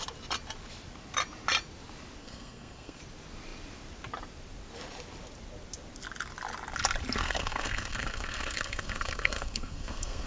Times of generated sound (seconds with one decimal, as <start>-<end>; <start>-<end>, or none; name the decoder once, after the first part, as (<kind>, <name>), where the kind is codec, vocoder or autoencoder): 2.2-3.0 (codec, SNAC); 7.2-10.3